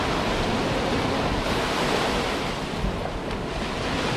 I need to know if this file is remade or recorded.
recorded